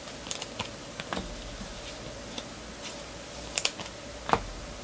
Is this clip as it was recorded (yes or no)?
yes